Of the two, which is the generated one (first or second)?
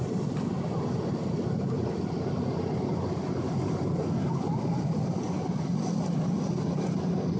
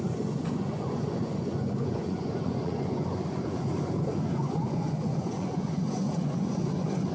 second